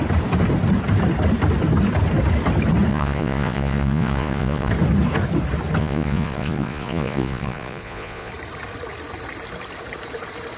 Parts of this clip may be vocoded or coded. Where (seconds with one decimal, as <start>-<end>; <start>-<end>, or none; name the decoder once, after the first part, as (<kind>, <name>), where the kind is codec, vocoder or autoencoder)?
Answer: 2.9-4.7 (vocoder, Vocos); 5.8-8.3